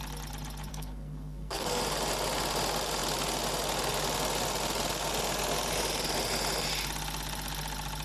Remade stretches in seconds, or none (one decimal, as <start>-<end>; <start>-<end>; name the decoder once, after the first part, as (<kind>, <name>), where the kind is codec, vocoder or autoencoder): 0.7-1.8 (codec, SNAC)

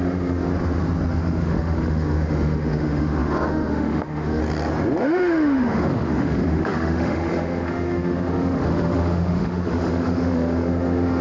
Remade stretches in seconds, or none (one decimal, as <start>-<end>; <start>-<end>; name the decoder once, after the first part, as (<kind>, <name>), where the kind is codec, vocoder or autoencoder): 0.0-0.5 (autoencoder, DAC-VAE); 1.1-4.4; 5.0-11.2

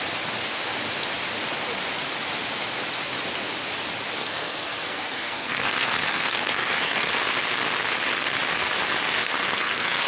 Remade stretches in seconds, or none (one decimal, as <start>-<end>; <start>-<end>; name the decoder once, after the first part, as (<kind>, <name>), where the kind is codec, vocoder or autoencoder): 4.2-7.1 (codec, SNAC); 9.2-10.1